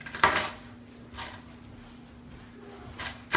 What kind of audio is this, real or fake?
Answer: real